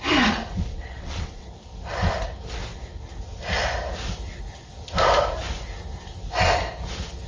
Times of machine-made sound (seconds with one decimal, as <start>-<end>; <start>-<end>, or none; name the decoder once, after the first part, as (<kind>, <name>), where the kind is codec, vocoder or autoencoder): 0.7-1.5 (vocoder, WaveNeXt)